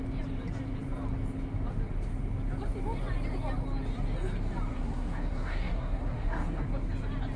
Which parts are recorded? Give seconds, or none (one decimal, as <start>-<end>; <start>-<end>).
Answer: 0.0-4.7; 6.6-7.4